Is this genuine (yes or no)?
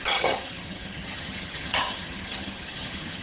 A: no